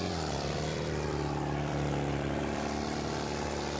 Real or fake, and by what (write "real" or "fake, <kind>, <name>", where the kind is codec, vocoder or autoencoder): fake, vocoder, BigVGAN v2